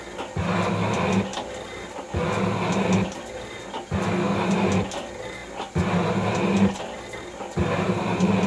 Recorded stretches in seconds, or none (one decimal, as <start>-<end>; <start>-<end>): 0.0-8.5